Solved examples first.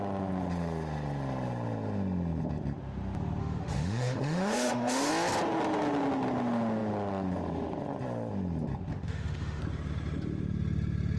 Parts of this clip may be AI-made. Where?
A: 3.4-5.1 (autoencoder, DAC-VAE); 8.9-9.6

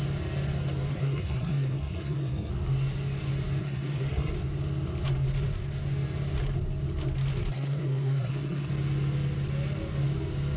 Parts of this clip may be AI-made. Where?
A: 0.9-2.5 (codec, SNAC); 3.6-4.3; 7.5-8.7

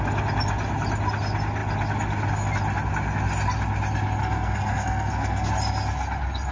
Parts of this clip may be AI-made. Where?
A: 4.2-5.5 (codec, SNAC)

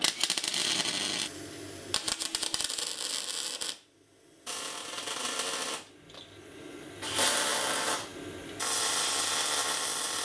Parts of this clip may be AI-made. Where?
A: none